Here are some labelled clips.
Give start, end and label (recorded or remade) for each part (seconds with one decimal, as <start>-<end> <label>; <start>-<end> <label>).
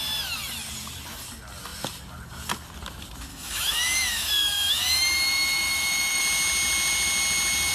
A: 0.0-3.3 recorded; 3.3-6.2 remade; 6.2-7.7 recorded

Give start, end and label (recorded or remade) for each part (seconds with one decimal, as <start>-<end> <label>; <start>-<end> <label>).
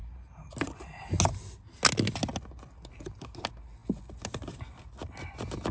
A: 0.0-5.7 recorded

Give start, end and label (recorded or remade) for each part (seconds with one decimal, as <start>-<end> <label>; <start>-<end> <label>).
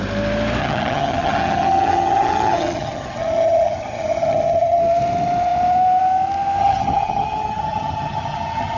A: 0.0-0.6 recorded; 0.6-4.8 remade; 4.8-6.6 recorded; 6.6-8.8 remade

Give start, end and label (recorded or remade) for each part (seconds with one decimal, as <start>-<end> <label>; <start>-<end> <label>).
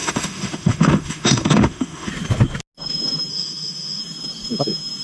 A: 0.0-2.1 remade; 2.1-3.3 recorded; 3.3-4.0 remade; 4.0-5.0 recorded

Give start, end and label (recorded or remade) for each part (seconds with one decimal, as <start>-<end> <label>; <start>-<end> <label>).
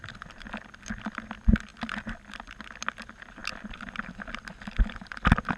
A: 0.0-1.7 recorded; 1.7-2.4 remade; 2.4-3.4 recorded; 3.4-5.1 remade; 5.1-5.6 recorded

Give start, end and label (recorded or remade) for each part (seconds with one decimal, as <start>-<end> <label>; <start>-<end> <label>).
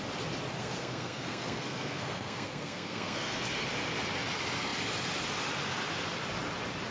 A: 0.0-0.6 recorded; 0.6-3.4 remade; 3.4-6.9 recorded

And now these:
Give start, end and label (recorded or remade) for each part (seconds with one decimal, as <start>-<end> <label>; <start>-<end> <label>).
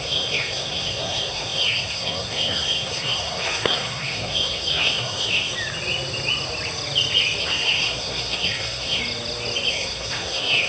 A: 0.0-5.5 remade; 5.5-7.4 recorded; 7.4-9.0 remade; 9.0-9.7 recorded; 9.7-10.7 remade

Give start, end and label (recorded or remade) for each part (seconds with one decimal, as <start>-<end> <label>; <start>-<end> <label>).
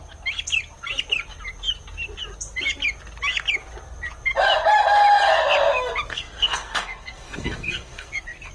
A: 0.0-6.1 recorded; 6.1-8.5 remade